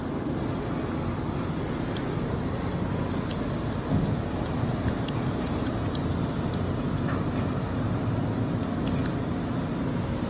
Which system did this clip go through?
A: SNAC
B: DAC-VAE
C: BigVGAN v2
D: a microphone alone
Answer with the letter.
D